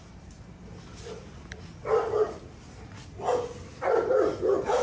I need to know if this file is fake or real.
fake